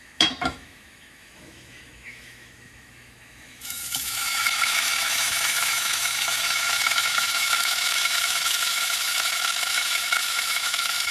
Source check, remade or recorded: remade